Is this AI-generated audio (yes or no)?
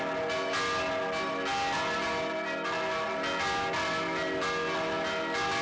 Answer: no